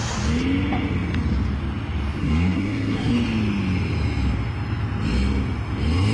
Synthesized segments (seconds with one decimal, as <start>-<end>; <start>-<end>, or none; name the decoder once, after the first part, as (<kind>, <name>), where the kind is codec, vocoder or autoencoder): 2.2-3.1 (codec, SNAC)